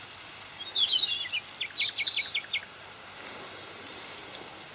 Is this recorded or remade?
recorded